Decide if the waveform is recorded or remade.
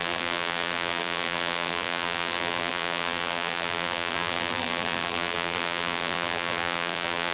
remade